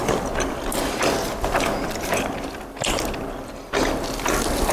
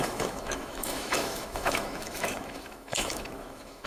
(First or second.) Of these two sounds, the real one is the first